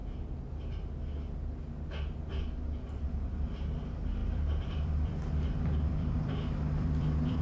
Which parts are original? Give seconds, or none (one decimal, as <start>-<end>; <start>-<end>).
0.0-4.2